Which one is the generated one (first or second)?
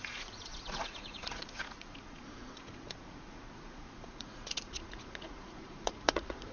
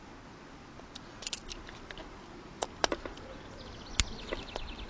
first